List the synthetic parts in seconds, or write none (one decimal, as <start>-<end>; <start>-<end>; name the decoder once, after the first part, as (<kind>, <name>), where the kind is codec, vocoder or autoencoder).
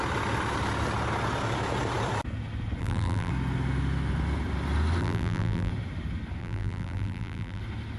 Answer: 2.8-3.3 (vocoder, BigVGAN v2); 5.0-5.7; 6.4-7.6